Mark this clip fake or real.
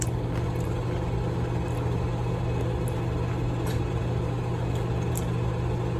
real